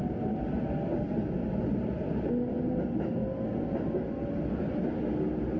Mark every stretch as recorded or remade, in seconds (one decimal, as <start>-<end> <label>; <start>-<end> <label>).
0.0-1.4 recorded; 1.4-1.9 remade; 1.9-5.6 recorded